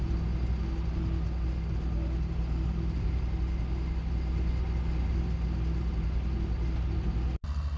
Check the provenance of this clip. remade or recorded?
recorded